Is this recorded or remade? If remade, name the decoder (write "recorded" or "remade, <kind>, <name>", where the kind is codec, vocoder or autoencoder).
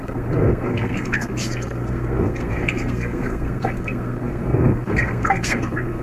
remade, codec, SNAC